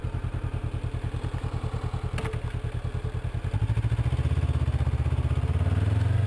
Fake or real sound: real